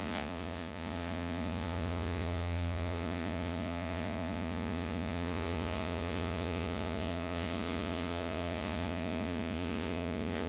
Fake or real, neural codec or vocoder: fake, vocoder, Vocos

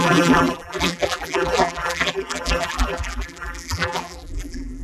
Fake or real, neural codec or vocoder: fake, vocoder, BigVGAN v2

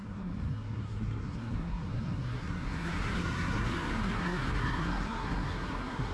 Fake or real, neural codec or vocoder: fake, codec, SNAC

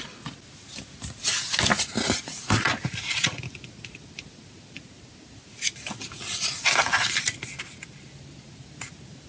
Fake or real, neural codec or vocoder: real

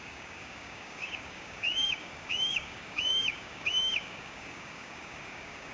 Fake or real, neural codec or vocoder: fake, codec, DAC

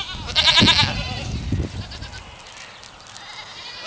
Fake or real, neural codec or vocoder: real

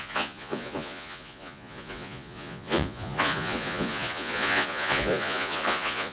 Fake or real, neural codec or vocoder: fake, vocoder, Vocos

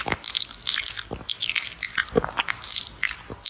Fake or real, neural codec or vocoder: real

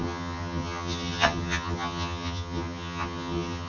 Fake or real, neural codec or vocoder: fake, vocoder, HiFi-GAN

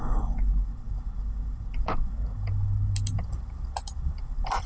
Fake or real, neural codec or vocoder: real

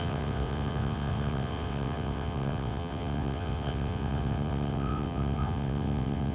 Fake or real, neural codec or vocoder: fake, vocoder, WaveNeXt